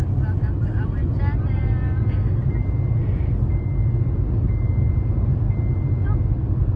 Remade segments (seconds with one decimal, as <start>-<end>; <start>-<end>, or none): none